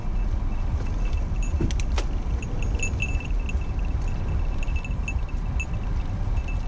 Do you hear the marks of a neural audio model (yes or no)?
no